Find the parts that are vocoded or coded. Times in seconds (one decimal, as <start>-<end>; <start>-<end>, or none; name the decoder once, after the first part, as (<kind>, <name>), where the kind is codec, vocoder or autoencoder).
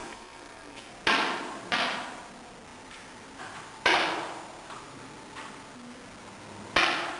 0.0-0.9 (codec, SNAC)